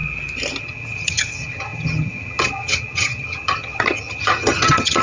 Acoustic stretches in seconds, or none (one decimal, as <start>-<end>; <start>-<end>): 0.0-0.6